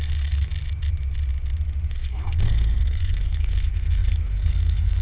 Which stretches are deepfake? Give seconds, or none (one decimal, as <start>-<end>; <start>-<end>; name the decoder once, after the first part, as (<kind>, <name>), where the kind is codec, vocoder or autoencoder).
0.0-0.5 (codec, SNAC); 1.9-5.0